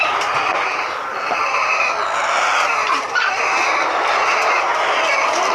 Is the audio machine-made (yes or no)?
no